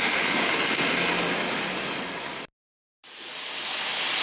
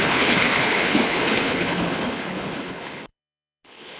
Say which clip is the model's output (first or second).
second